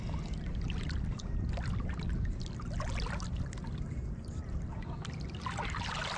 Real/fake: real